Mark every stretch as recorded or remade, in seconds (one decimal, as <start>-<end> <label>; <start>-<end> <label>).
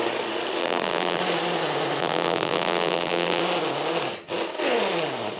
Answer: 0.0-0.6 recorded; 0.6-1.2 remade; 1.2-2.0 recorded; 2.0-3.4 remade; 3.4-5.4 recorded